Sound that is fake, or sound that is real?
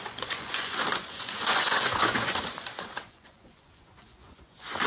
fake